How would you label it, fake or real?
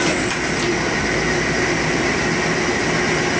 real